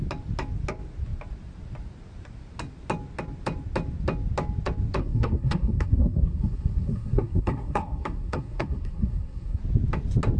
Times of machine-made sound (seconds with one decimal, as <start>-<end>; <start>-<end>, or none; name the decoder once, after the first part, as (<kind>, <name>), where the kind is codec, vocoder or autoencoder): 5.0-9.6 (codec, SNAC)